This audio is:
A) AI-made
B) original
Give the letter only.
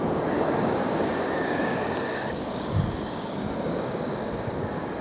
A